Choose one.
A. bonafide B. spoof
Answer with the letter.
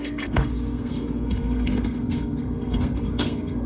B